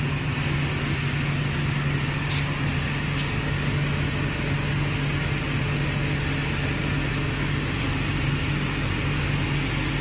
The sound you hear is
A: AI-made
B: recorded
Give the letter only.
B